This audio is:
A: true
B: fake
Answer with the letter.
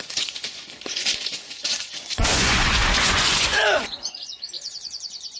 B